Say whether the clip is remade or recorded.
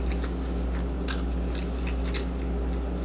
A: recorded